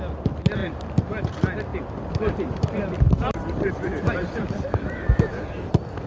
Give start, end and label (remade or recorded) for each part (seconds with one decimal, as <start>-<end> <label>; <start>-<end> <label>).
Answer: 0.0-1.7 recorded; 1.7-5.4 remade; 5.4-6.1 recorded